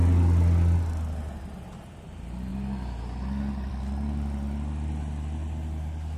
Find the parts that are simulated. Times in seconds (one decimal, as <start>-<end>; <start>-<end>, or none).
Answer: none